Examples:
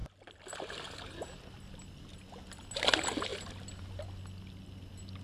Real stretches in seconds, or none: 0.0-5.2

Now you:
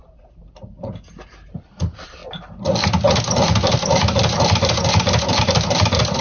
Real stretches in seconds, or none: 0.0-6.2

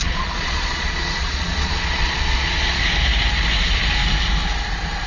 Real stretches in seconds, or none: 2.8-5.1

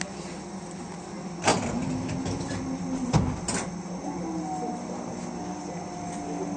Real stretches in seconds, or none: 0.0-6.6

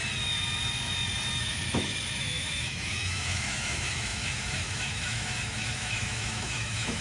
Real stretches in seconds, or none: 0.0-1.4

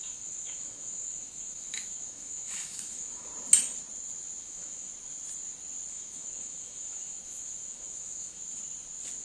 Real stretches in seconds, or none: 3.3-4.4; 4.9-5.9; 8.4-9.2